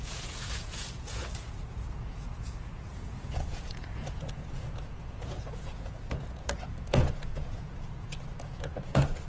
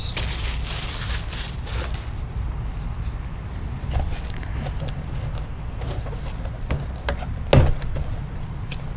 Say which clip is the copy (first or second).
first